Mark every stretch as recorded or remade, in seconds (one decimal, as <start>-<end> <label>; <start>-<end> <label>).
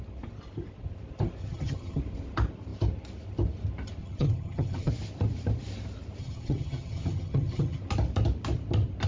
0.0-1.4 recorded; 1.4-2.0 remade; 2.0-4.0 recorded; 4.0-4.9 remade; 4.9-6.2 recorded; 6.2-7.8 remade; 7.8-9.1 recorded